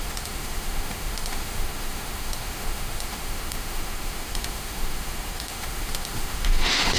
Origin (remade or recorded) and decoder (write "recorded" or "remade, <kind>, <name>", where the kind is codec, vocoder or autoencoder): remade, autoencoder, DAC-VAE